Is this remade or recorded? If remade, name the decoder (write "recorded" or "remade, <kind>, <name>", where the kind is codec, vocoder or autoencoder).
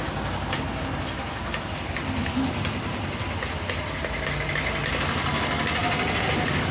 recorded